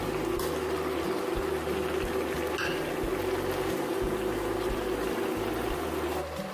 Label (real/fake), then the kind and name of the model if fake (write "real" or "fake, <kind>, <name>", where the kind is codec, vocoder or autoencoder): real